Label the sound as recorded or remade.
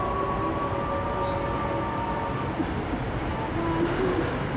recorded